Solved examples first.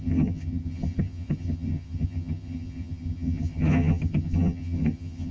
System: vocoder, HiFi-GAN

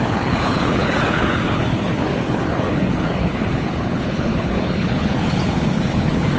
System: codec, HILCodec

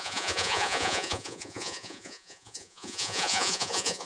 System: vocoder, Vocos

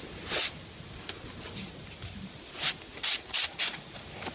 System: none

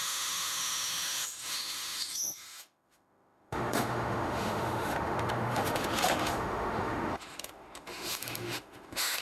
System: autoencoder, DAC-VAE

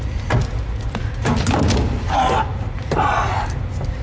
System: none